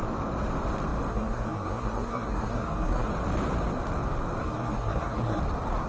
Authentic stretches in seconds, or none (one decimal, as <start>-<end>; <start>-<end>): 0.0-1.1; 3.1-4.4; 5.4-5.9